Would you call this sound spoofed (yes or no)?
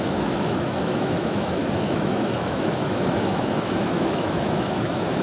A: yes